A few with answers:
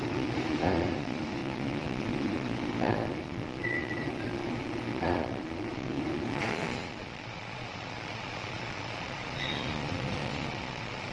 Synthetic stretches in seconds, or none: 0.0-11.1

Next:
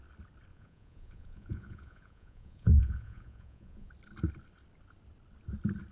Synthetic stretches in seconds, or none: 0.5-3.9

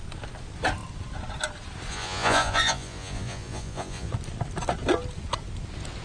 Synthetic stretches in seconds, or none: 1.9-4.1

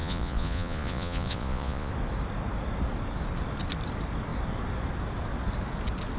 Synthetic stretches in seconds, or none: 0.0-1.9